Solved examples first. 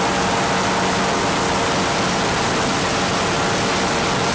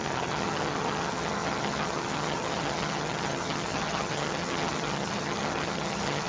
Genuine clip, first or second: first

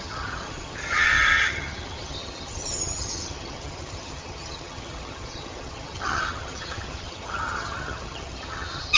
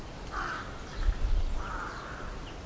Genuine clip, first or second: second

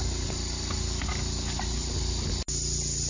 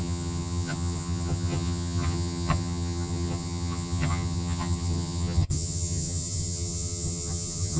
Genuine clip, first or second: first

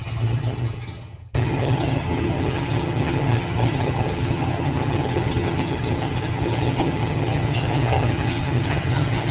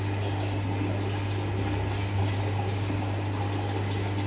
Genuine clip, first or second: second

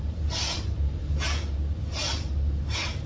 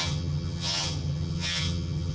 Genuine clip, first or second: first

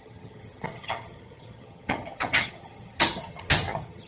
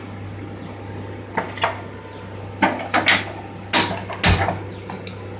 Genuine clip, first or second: second